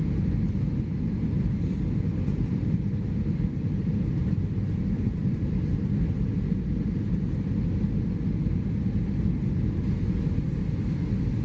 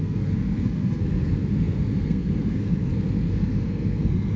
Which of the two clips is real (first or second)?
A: first